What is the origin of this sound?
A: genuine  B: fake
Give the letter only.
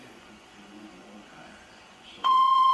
B